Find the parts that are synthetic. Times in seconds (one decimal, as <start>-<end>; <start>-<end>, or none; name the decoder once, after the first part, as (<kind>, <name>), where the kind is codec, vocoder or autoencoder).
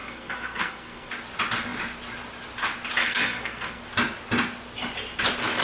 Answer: 0.0-1.1 (codec, SNAC); 3.0-3.8